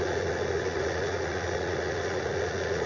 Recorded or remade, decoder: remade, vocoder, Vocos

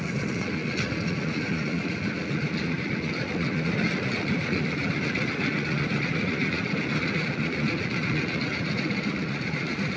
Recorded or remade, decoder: remade, vocoder, Vocos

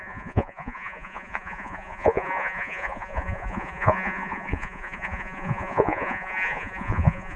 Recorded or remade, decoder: remade, vocoder, Vocos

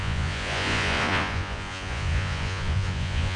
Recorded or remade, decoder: remade, vocoder, Vocos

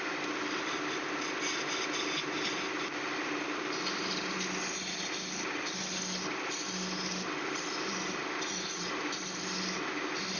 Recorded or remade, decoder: recorded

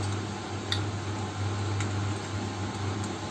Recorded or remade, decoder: recorded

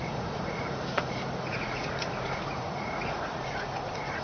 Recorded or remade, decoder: remade, vocoder, Vocos